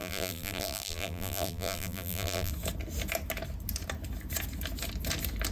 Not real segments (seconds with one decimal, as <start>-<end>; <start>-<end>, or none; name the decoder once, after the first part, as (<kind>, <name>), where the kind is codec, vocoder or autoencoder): 0.0-2.5 (vocoder, BigVGAN v2)